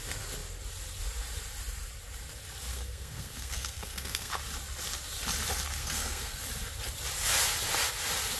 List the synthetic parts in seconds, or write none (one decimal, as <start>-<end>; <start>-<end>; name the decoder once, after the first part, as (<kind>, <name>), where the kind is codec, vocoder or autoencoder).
2.7-4.3 (codec, SNAC); 5.8-6.4